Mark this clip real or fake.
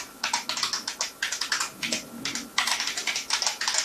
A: real